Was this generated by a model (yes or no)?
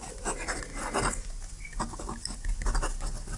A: no